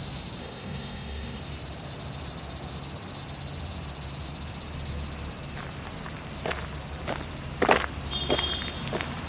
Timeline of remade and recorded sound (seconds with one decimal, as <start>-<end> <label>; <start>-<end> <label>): 0.0-0.4 recorded; 0.4-1.4 remade; 1.4-9.3 recorded